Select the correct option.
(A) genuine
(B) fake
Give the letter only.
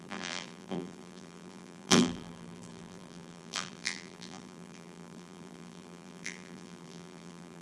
B